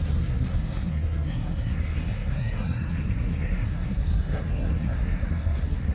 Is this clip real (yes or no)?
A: no